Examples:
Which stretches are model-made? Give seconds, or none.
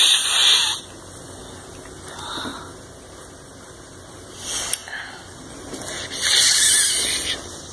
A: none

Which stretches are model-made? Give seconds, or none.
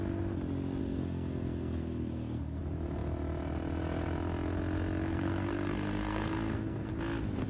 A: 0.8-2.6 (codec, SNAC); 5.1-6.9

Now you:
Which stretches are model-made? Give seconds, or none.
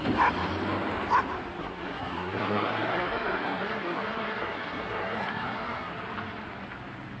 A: 1.6-5.9 (codec, SNAC)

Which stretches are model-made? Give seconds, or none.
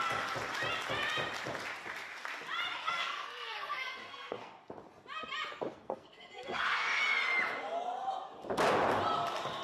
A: 2.8-4.5 (codec, SNAC); 5.5-7.0